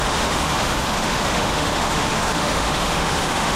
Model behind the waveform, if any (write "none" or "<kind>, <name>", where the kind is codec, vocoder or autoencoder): autoencoder, DAC-VAE